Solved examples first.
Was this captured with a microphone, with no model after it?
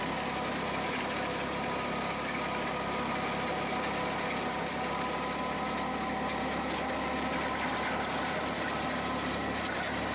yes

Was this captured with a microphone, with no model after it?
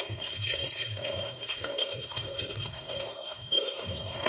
no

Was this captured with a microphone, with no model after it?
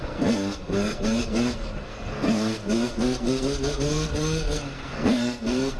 no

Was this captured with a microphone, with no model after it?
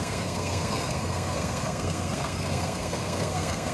no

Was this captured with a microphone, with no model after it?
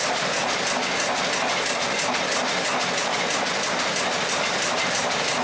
yes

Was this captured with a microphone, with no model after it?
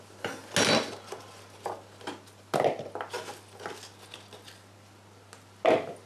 yes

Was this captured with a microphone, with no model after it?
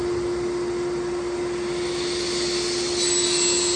yes